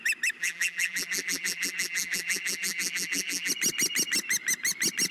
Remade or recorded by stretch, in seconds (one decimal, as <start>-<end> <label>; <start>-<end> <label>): 0.0-0.4 recorded; 0.4-3.5 remade; 3.5-5.1 recorded